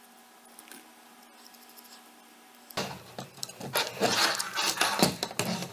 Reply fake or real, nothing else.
real